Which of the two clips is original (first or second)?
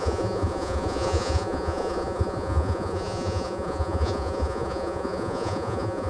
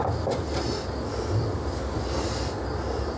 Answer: second